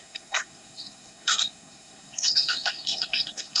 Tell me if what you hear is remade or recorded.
remade